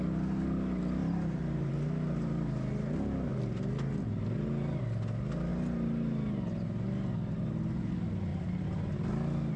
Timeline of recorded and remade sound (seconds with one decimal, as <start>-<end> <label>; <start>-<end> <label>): 0.0-9.6 recorded